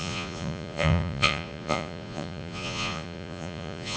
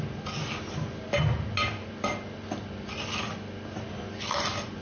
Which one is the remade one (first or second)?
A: first